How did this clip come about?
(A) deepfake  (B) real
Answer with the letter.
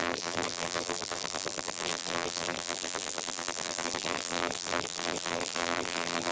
A